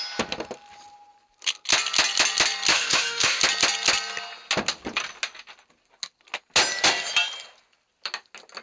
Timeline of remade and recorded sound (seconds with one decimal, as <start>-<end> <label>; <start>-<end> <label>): 0.0-2.7 recorded; 2.7-3.4 remade; 3.4-8.6 recorded